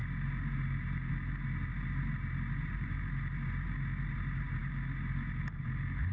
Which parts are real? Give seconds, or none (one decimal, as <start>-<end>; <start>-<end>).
0.0-6.1